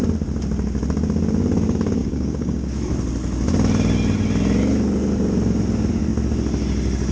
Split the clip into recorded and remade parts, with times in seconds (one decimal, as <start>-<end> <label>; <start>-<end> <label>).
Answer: 0.0-2.0 recorded; 2.0-2.7 remade; 2.7-7.1 recorded